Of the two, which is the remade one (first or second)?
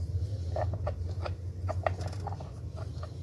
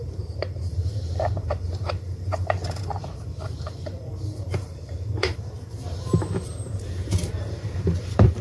second